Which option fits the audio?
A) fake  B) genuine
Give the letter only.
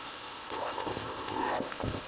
A